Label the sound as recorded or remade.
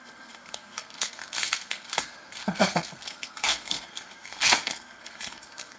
remade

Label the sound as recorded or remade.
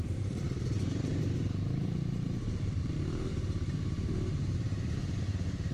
remade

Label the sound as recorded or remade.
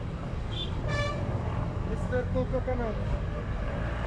remade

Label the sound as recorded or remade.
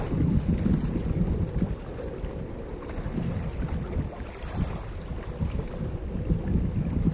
recorded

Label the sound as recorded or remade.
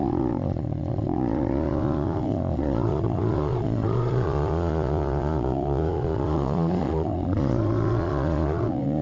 remade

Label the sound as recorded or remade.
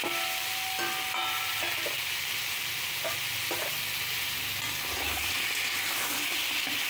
recorded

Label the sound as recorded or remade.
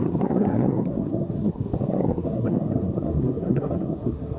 remade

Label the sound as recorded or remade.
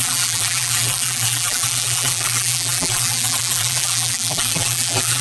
remade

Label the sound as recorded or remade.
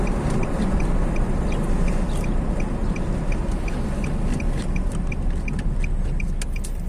recorded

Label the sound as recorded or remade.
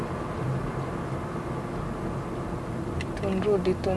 recorded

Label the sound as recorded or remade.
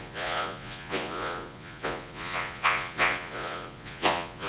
remade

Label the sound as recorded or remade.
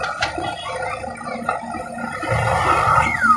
recorded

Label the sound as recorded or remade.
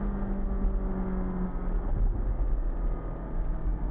recorded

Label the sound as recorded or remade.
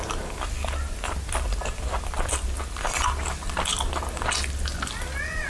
recorded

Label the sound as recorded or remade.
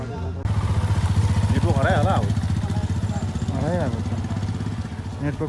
recorded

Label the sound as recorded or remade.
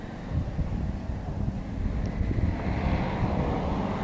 recorded